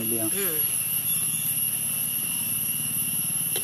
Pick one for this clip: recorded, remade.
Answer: recorded